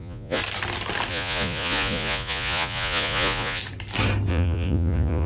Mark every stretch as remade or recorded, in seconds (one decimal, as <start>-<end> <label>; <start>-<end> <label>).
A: 0.0-0.4 remade; 0.4-1.1 recorded; 1.1-3.6 remade; 3.6-4.3 recorded; 4.3-5.3 remade